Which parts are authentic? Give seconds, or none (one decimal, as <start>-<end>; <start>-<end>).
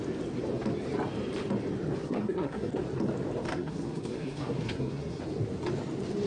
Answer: 0.0-2.0; 2.7-3.5; 5.2-6.3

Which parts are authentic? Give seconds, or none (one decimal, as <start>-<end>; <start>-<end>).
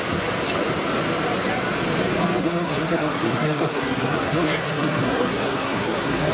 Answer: 0.0-2.4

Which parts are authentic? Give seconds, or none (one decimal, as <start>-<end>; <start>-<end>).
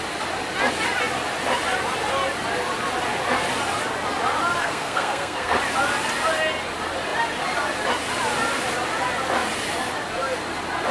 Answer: 0.0-4.6; 5.6-10.9